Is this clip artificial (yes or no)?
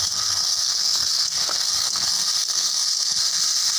yes